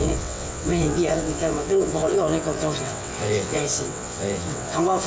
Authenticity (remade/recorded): remade